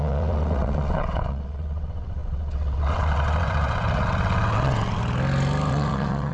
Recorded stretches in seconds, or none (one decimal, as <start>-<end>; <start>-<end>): 5.0-5.7